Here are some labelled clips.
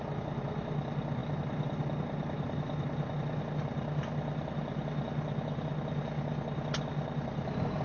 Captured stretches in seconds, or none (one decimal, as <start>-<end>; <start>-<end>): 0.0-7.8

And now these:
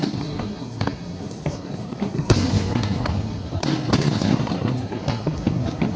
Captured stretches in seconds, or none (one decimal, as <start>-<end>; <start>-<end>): none

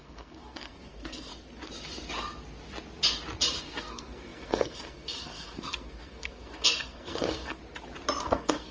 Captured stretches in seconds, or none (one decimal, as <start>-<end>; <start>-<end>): 1.3-3.6; 7.6-8.2

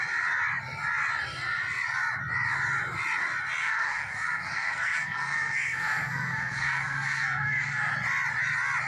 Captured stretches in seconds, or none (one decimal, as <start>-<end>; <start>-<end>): 0.0-3.6; 7.9-8.9